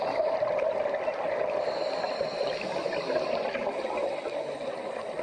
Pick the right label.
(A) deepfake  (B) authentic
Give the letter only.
B